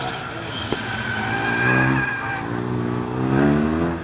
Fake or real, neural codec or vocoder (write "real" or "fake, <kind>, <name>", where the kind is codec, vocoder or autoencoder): real